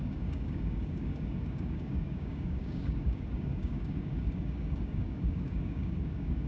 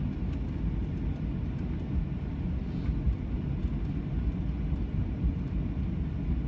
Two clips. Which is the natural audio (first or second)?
second